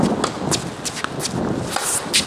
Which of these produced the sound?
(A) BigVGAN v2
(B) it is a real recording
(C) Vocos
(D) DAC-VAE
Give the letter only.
B